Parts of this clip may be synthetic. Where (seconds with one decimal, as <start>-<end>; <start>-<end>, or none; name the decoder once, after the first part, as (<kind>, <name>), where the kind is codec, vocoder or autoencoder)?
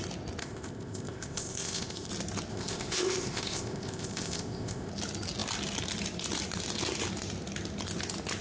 0.4-2.1 (codec, ZipCodec); 2.5-4.9